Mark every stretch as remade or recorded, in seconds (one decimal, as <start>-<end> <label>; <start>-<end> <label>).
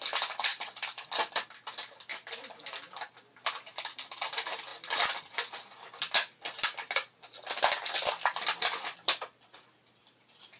0.0-0.5 recorded; 0.5-1.1 remade; 1.1-10.6 recorded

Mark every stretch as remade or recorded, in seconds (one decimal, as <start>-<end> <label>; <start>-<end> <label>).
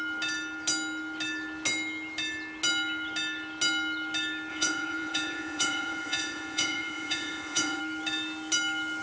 0.0-4.5 recorded; 4.5-7.8 remade; 7.8-9.0 recorded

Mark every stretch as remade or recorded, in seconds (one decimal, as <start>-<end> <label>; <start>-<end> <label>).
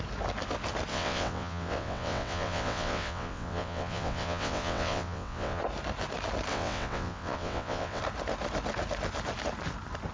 0.0-0.9 recorded; 0.9-5.6 remade; 5.6-6.5 recorded; 6.5-8.0 remade; 8.0-10.1 recorded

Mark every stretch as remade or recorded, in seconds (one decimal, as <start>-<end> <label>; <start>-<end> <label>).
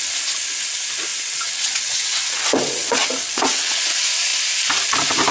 0.0-1.1 recorded; 1.1-3.8 remade; 3.8-5.3 recorded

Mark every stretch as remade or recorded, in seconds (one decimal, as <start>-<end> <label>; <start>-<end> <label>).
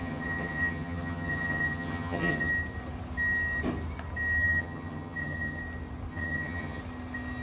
0.0-2.5 remade; 2.5-4.4 recorded; 4.4-5.6 remade; 5.6-6.1 recorded; 6.1-6.8 remade; 6.8-7.4 recorded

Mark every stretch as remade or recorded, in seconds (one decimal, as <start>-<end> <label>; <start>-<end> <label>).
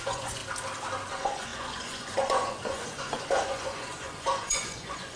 0.0-0.4 remade; 0.4-1.1 recorded; 1.1-5.2 remade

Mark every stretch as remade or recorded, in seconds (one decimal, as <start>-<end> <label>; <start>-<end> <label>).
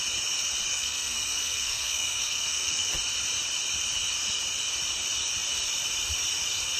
0.0-0.7 recorded; 0.7-2.9 remade; 2.9-6.8 recorded